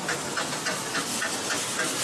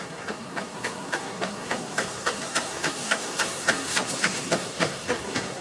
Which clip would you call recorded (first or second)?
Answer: first